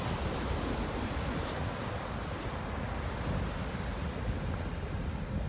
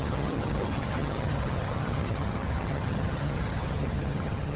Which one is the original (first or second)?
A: first